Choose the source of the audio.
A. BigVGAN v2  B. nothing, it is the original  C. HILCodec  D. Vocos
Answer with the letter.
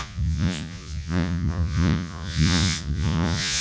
D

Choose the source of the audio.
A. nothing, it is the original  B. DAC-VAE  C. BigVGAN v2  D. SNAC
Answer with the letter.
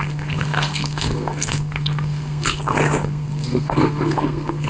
D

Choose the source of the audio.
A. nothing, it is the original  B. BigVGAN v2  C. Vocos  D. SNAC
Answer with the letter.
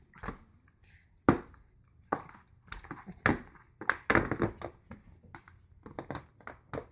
A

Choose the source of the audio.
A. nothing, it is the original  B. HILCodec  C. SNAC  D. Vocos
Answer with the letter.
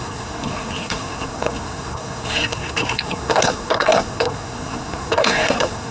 C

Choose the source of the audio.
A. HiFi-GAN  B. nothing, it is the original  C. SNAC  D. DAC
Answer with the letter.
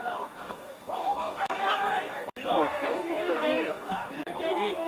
D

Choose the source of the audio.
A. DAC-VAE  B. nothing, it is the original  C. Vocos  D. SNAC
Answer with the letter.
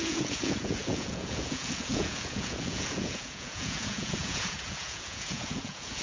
C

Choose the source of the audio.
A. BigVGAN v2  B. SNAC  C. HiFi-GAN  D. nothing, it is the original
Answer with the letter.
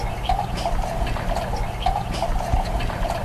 A